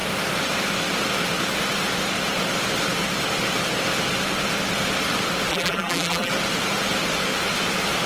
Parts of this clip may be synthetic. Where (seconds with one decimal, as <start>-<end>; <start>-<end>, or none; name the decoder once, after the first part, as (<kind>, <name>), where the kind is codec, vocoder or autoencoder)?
5.5-6.3 (vocoder, BigVGAN v2)